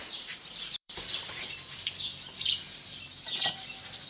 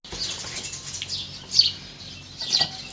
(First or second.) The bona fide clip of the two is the second